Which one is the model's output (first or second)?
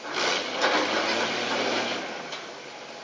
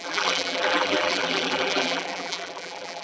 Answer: second